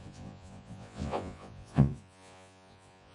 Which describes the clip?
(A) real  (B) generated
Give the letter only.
B